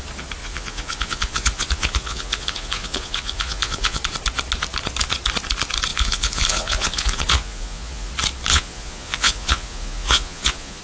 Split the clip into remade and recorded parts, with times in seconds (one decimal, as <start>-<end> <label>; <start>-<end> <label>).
0.0-0.4 recorded; 0.4-4.0 remade; 4.0-5.9 recorded; 5.9-8.1 remade; 8.1-8.5 recorded; 8.5-10.8 remade